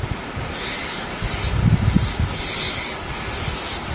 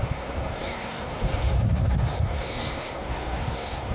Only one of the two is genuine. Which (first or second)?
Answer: first